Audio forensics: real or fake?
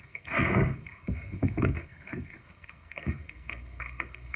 fake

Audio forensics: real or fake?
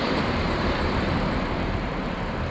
fake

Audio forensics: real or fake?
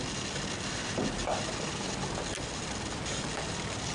real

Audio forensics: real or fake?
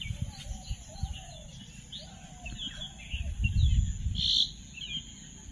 real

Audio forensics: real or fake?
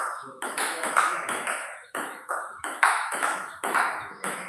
fake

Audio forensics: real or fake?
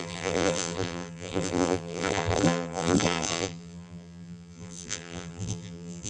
fake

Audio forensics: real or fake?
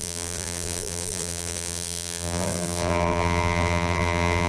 fake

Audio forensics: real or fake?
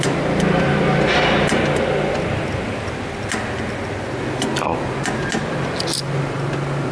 real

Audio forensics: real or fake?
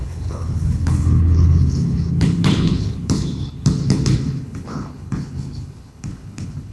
fake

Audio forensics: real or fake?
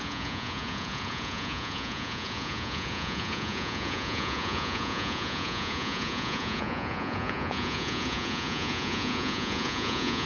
fake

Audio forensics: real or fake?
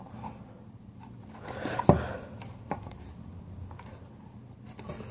real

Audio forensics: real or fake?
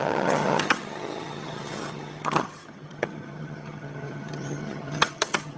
fake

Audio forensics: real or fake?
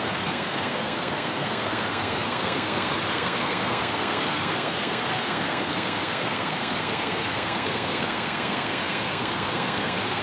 fake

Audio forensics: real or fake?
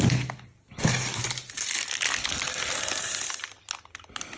real